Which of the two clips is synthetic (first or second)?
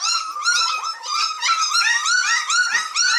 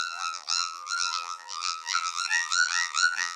second